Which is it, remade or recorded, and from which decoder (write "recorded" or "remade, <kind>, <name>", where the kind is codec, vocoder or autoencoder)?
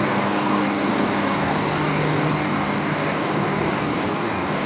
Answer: remade, codec, DAC